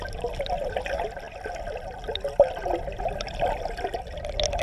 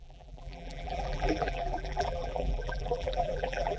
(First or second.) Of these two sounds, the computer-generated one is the second